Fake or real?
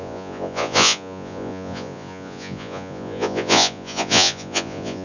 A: fake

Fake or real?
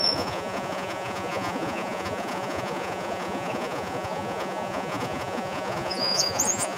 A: fake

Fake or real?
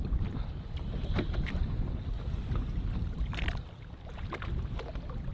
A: real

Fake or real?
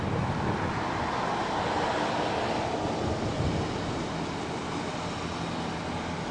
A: real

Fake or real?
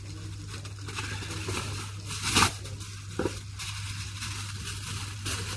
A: real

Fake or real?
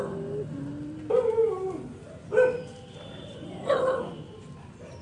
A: real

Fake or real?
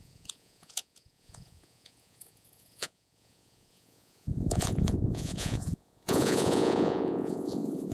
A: fake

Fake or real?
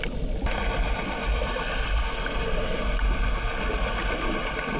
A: real